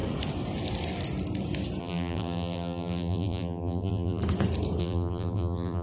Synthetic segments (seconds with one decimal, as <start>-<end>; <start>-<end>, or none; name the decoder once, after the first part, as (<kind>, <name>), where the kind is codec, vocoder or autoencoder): 1.8-4.2 (vocoder, BigVGAN v2); 4.8-5.8